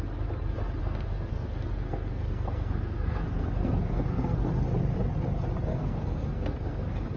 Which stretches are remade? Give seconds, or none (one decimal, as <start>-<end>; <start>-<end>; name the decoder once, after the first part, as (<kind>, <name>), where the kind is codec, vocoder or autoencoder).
0.8-4.5 (codec, SNAC); 5.7-7.2